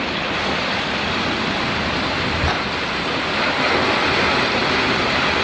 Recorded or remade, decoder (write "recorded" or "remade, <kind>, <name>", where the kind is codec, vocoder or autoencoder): recorded